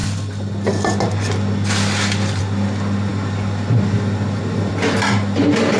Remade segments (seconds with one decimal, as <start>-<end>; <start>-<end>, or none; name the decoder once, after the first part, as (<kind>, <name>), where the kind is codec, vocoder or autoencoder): none